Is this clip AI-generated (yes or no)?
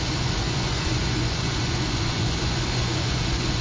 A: yes